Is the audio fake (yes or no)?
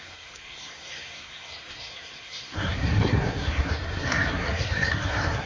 yes